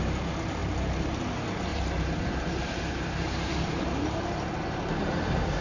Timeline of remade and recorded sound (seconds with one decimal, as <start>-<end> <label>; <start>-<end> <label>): 0.0-0.6 recorded; 0.6-1.2 remade; 1.2-1.7 recorded; 1.7-5.1 remade; 5.1-5.6 recorded